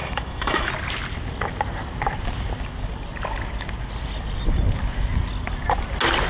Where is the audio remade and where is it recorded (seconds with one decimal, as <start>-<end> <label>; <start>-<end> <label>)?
0.0-0.7 remade; 0.7-6.3 recorded